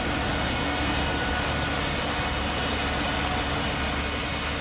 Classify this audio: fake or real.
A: real